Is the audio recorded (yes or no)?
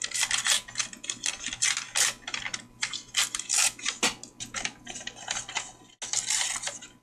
yes